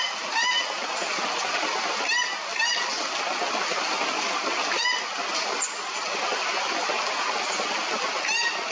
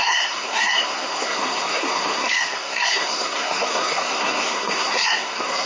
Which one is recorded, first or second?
first